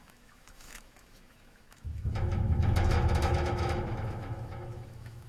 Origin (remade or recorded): remade